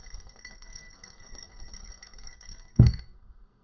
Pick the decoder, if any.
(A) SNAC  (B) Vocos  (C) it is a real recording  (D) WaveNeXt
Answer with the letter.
A